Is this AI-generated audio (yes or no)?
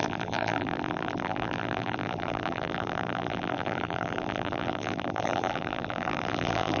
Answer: yes